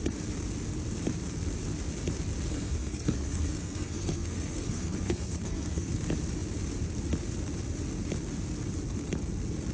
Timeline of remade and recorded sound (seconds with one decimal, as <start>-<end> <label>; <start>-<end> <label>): 0.0-2.5 recorded; 2.5-5.9 remade; 5.9-9.7 recorded